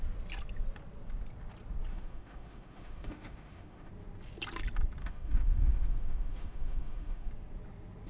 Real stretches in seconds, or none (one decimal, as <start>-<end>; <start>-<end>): 0.0-1.9; 3.9-5.0; 7.3-8.1